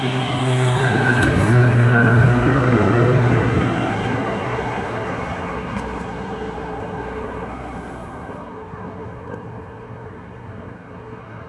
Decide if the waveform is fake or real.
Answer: fake